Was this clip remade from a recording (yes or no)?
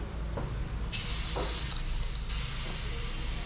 no